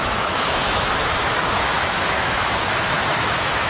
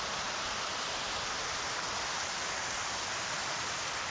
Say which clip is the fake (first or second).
first